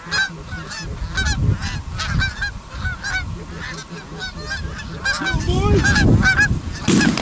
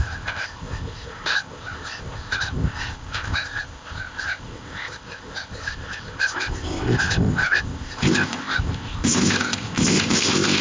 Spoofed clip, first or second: second